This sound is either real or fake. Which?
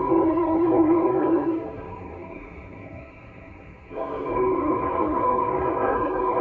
fake